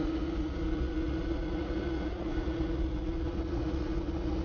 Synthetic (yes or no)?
yes